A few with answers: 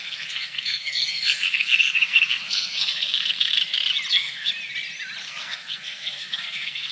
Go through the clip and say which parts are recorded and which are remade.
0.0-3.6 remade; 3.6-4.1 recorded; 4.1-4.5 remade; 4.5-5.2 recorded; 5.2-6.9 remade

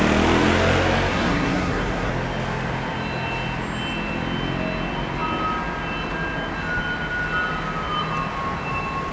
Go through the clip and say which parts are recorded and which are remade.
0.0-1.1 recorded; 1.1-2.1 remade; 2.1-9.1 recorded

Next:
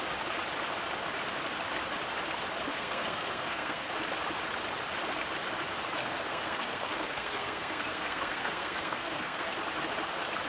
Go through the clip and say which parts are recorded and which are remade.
0.0-2.7 recorded; 2.7-3.9 remade; 3.9-6.0 recorded; 6.0-9.5 remade; 9.5-10.5 recorded

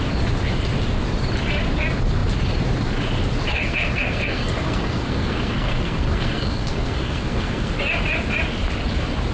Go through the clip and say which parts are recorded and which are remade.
0.0-3.5 recorded; 3.5-7.7 remade; 7.7-9.3 recorded

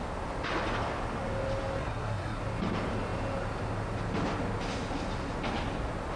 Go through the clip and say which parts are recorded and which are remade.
0.0-1.8 recorded; 1.8-2.4 remade; 2.4-6.2 recorded